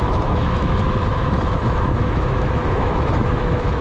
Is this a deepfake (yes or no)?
yes